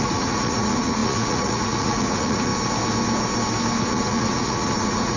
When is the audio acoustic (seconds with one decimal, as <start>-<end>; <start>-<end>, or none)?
2.5-3.8